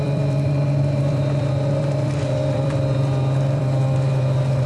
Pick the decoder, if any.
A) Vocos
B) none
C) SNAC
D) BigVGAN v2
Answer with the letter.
D